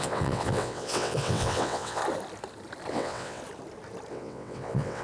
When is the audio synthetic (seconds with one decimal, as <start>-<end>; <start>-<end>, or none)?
0.0-2.0; 2.9-3.4; 4.1-5.0